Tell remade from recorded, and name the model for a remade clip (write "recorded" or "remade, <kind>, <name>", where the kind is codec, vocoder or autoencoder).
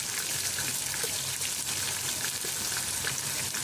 recorded